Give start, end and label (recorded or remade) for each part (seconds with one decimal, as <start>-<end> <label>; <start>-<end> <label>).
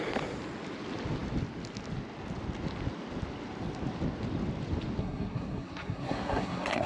0.0-5.0 recorded; 5.0-6.9 remade